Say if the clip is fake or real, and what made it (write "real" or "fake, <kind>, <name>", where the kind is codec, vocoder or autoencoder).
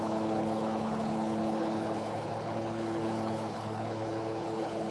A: fake, codec, HILCodec